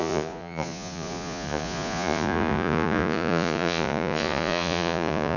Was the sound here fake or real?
fake